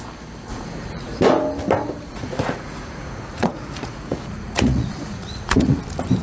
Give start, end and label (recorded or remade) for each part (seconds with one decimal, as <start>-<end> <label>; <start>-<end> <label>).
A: 0.0-0.5 recorded; 0.5-1.2 remade; 1.2-2.1 recorded; 2.1-5.8 remade; 5.8-6.2 recorded